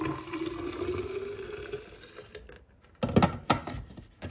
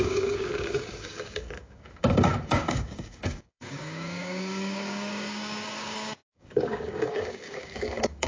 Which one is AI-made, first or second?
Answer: second